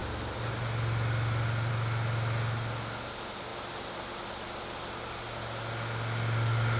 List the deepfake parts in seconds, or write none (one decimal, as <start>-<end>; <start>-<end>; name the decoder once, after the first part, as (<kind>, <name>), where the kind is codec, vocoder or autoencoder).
none